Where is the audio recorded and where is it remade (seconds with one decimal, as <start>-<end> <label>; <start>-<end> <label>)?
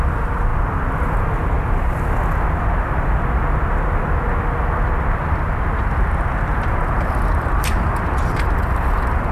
0.0-0.5 remade; 0.5-5.8 recorded; 5.8-9.3 remade